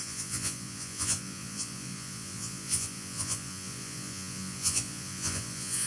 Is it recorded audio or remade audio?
remade